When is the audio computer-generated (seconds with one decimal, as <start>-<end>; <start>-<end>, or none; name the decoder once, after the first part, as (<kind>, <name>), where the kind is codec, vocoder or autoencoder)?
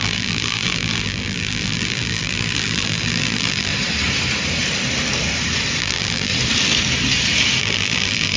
0.0-3.7 (vocoder, BigVGAN v2); 5.8-6.3; 7.6-8.4